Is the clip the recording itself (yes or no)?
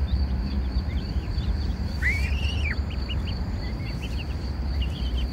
no